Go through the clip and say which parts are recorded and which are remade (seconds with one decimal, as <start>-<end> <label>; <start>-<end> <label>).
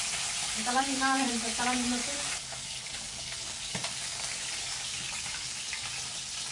0.0-0.4 recorded; 0.4-1.3 remade; 1.3-2.0 recorded; 2.0-5.9 remade; 5.9-6.5 recorded